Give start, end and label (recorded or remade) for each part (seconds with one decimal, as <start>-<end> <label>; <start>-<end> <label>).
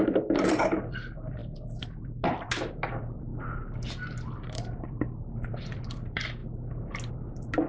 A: 0.0-3.3 remade; 3.3-3.9 recorded; 3.9-6.4 remade; 6.4-7.1 recorded; 7.1-7.7 remade